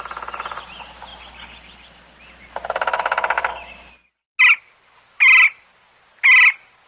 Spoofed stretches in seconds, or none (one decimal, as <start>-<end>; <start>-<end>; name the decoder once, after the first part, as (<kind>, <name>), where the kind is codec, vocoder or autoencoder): none